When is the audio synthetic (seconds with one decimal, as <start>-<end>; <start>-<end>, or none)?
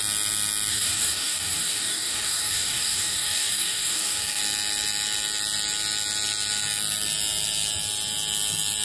0.7-4.4